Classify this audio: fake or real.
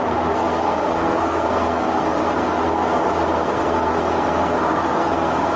fake